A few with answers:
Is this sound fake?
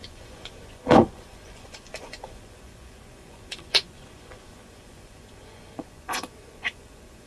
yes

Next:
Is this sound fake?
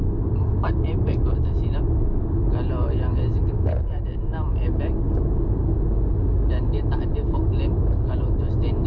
no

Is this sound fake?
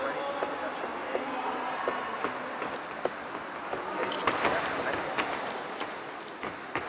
no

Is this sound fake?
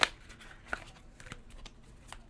no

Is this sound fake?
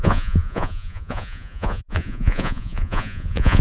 yes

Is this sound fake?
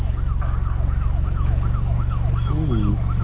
yes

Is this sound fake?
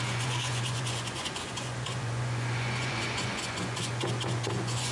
yes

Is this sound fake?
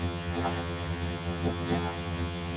yes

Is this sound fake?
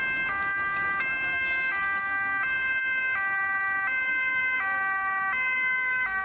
no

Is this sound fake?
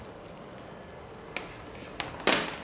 no